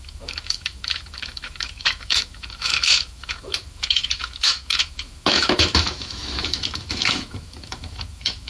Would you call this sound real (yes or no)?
no